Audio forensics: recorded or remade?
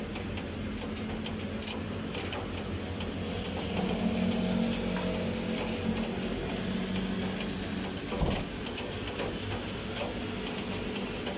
recorded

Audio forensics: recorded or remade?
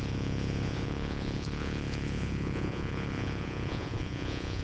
remade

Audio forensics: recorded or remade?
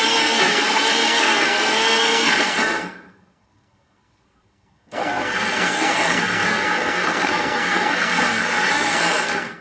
remade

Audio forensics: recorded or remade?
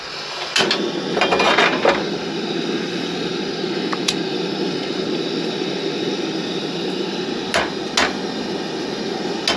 recorded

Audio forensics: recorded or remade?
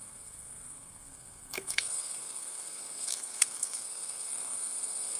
remade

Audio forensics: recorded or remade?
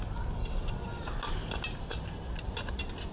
recorded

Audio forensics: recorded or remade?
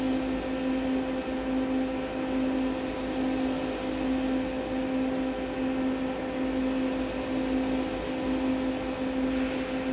recorded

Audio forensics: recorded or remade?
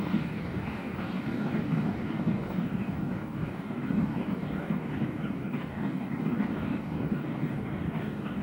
remade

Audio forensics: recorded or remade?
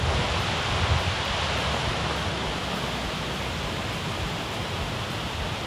recorded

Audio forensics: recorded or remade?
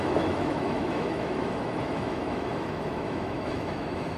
remade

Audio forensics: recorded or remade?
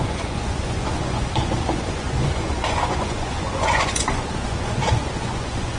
remade